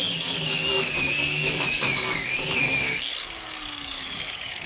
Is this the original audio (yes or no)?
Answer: no